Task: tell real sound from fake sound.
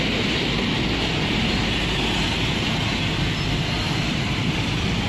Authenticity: real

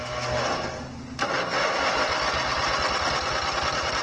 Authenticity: real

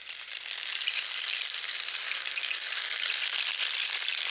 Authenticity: real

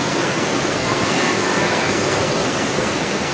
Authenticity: fake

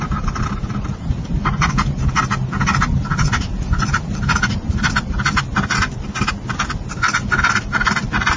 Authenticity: real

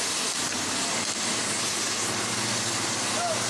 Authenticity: real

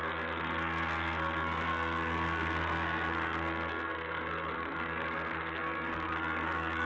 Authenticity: fake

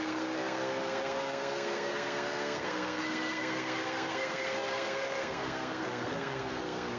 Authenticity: fake